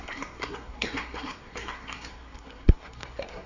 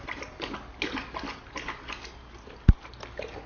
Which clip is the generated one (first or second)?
first